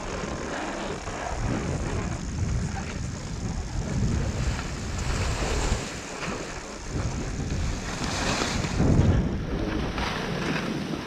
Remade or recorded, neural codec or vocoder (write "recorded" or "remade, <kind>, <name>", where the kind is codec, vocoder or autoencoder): recorded